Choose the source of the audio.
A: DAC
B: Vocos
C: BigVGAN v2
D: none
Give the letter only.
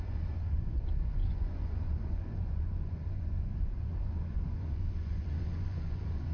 B